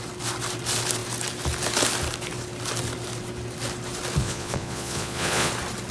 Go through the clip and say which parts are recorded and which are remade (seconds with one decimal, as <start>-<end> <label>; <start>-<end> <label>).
0.0-4.2 recorded; 4.2-5.5 remade; 5.5-5.9 recorded